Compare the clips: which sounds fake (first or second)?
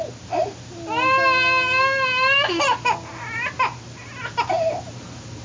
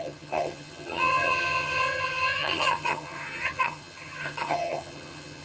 second